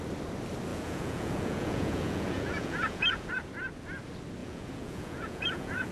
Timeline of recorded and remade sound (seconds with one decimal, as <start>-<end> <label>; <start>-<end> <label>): 0.0-0.7 recorded; 0.7-3.3 remade; 3.3-4.4 recorded; 4.4-5.9 remade